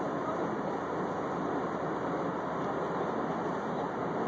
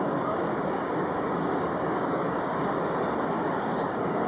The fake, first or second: second